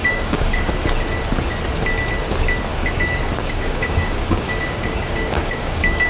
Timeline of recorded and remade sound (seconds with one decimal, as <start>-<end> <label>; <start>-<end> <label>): 0.0-0.7 remade; 0.7-2.7 recorded; 2.7-6.1 remade